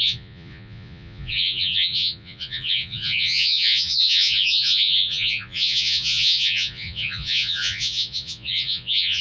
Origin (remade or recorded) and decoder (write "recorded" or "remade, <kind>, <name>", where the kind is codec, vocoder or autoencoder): remade, vocoder, Vocos